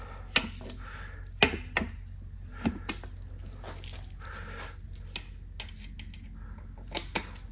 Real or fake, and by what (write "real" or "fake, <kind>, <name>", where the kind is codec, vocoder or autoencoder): real